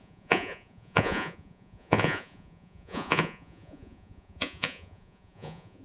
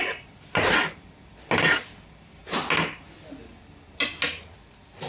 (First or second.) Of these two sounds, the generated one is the first